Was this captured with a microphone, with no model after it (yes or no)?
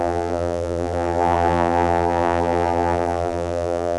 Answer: no